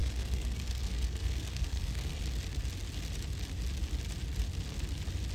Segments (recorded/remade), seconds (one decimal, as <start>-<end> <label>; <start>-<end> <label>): 0.0-2.2 remade; 2.2-5.3 recorded